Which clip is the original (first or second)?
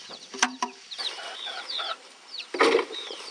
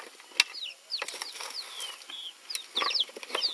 second